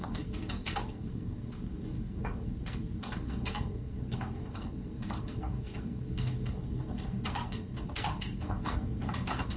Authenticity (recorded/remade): remade